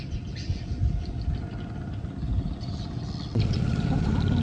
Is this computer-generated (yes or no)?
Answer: no